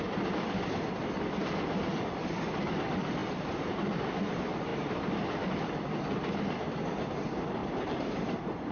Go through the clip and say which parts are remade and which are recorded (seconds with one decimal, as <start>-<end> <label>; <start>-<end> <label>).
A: 0.0-3.2 recorded; 3.2-4.3 remade; 4.3-7.6 recorded; 7.6-8.7 remade